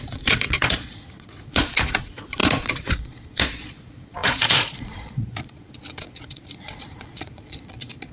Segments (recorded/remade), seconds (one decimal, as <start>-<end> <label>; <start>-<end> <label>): 0.0-8.1 remade